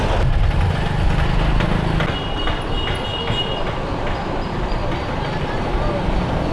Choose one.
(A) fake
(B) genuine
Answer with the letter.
B